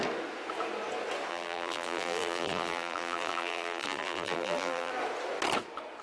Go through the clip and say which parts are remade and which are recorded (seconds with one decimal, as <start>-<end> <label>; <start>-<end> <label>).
0.0-1.3 recorded; 1.3-4.9 remade; 4.9-6.0 recorded